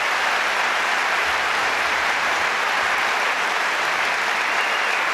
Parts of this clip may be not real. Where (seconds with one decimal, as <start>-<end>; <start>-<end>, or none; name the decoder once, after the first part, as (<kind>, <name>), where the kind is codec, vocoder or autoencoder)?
1.2-3.7 (vocoder, BigVGAN v2)